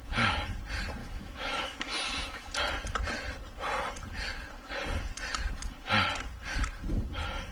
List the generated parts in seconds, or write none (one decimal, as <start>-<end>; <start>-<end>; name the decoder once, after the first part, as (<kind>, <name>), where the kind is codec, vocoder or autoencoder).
1.0-2.5 (autoencoder, DAC-VAE)